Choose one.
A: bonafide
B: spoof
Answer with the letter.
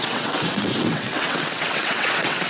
B